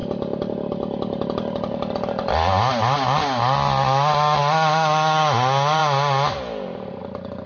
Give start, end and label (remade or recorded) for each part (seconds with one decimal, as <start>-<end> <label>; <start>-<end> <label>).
0.0-7.5 recorded